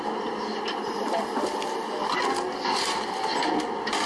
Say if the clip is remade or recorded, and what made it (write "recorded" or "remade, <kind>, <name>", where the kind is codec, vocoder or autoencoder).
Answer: recorded